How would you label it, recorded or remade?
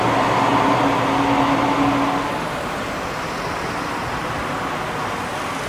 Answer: recorded